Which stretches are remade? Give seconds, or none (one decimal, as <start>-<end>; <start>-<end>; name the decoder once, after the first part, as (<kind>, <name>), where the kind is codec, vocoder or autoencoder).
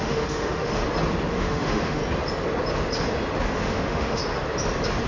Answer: 0.0-0.8 (autoencoder, DAC-VAE); 1.3-2.0; 3.5-4.2